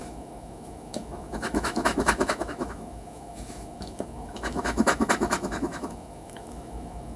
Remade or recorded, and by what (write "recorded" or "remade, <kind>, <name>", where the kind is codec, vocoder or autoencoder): remade, autoencoder, DAC-VAE